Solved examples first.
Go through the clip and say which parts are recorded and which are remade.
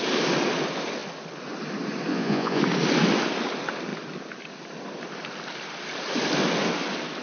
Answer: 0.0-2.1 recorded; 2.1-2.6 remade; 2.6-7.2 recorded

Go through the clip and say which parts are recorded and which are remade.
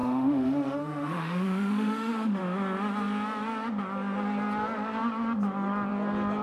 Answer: 0.0-2.4 remade; 2.4-6.4 recorded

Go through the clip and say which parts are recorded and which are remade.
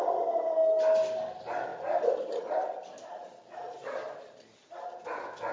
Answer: 0.0-5.5 recorded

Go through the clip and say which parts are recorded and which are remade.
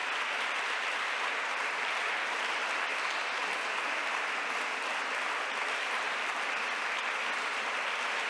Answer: 0.0-8.3 recorded